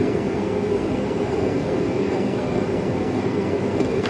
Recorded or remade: remade